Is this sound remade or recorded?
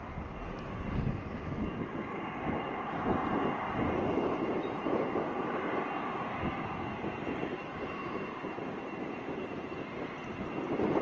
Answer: recorded